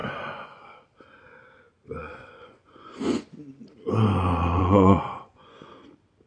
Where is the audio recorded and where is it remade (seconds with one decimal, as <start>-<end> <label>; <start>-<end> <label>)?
0.0-0.6 remade; 0.6-2.0 recorded; 2.0-3.2 remade; 3.2-4.6 recorded; 4.6-5.7 remade; 5.7-6.3 recorded